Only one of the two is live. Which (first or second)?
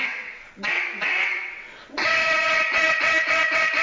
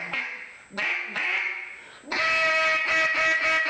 second